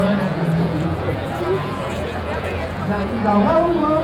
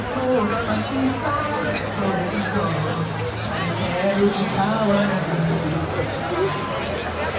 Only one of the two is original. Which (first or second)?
second